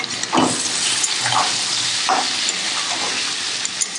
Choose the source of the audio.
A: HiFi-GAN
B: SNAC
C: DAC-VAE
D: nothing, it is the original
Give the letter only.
D